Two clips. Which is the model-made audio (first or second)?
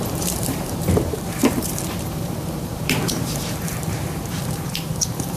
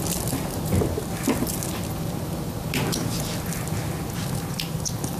first